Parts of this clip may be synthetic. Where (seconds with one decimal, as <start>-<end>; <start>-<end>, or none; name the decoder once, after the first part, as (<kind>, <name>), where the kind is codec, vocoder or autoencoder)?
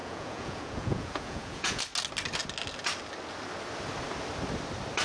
0.0-1.8 (vocoder, Vocos)